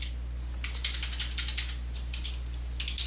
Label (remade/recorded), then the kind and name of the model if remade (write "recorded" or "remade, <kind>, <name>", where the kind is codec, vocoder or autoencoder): recorded